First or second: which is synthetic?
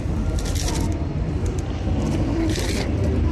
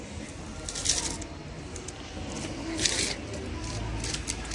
first